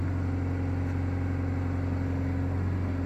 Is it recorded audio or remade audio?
recorded